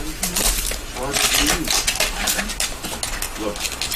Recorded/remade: recorded